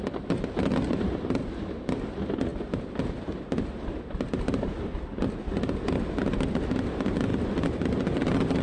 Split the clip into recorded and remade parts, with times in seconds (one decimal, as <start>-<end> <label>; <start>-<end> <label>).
0.0-8.6 recorded